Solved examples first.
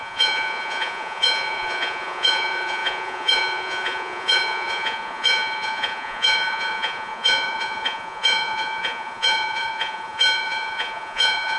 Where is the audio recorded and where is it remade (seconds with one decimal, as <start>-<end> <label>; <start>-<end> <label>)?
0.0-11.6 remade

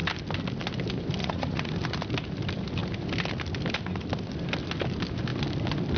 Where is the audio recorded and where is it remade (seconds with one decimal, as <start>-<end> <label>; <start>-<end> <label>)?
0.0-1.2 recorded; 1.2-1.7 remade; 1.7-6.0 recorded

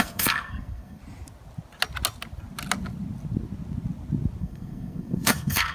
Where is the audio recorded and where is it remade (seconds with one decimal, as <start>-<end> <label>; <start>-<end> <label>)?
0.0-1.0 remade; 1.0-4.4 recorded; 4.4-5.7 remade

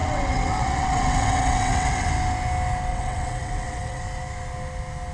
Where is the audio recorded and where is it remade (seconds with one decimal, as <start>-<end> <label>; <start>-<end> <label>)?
0.0-2.1 remade; 2.1-2.9 recorded; 2.9-4.0 remade; 4.0-5.1 recorded